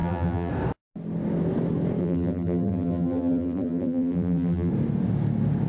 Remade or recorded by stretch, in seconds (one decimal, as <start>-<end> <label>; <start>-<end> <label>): 0.0-0.5 remade; 0.5-2.0 recorded; 2.0-4.7 remade; 4.7-5.7 recorded